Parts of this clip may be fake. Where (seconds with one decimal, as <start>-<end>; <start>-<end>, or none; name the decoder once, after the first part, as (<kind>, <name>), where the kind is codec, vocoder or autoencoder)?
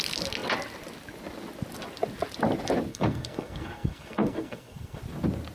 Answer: 2.9-5.0 (codec, SNAC)